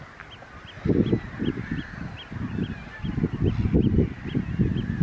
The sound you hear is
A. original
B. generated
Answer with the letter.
A